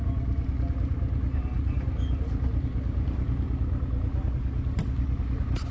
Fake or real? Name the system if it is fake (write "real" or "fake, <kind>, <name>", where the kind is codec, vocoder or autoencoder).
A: real